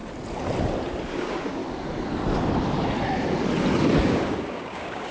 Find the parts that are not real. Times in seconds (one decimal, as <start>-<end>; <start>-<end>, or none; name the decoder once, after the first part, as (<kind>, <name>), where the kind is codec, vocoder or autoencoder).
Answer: 1.1-1.6 (codec, DAC); 4.0-5.1